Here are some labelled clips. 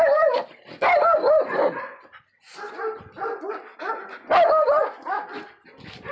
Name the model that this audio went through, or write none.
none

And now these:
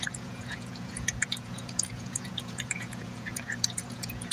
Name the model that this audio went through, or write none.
vocoder, Vocos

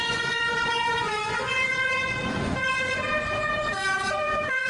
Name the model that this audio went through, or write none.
vocoder, Vocos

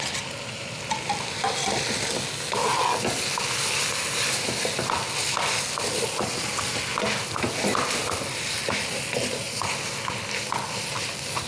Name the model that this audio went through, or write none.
none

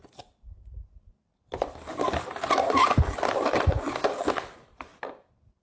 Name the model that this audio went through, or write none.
none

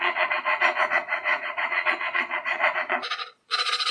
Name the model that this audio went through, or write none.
vocoder, Vocos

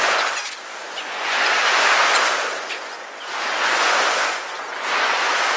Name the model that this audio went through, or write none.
vocoder, Vocos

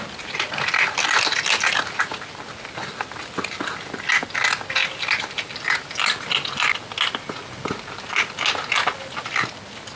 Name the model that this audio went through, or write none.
none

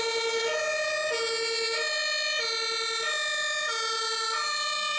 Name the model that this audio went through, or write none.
none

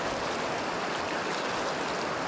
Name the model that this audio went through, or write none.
none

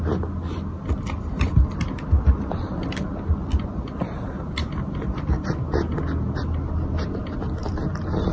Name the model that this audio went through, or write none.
none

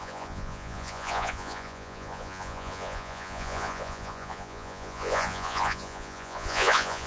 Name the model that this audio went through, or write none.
vocoder, Vocos